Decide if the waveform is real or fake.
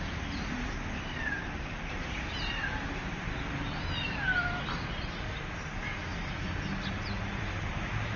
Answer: real